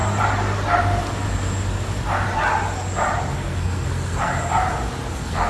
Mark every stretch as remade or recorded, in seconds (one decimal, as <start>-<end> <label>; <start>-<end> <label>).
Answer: 0.0-3.3 recorded; 3.3-4.3 remade; 4.3-5.1 recorded; 5.1-5.5 remade